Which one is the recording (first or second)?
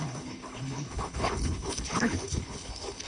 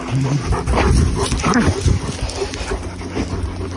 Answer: second